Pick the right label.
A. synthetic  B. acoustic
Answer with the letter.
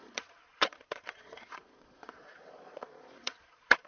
A